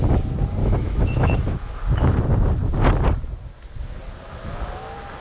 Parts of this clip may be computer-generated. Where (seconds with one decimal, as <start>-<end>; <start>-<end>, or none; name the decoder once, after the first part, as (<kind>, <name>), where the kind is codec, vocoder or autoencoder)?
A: 0.6-1.7 (autoencoder, DAC-VAE)

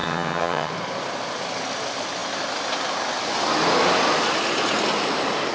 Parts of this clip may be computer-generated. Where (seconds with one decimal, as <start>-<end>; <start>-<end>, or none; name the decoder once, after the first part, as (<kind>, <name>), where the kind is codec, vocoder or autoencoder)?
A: 0.0-0.7 (vocoder, HiFi-GAN)

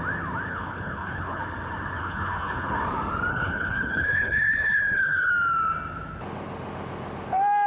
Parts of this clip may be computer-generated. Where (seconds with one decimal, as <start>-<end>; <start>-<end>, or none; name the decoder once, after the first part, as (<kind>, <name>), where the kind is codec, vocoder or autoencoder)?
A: 0.5-1.4 (codec, HILCodec); 2.0-2.7; 3.3-5.3

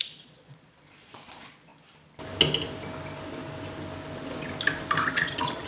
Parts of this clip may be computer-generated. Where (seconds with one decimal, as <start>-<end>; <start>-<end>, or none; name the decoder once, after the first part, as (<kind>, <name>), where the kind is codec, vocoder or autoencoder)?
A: 0.0-1.7 (vocoder, Vocos); 5.1-5.7